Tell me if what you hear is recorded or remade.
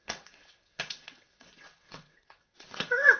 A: remade